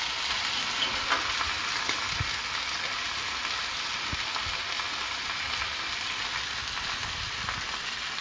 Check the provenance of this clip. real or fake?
real